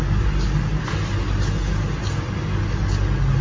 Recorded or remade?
recorded